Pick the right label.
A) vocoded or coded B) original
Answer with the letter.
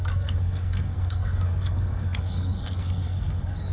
A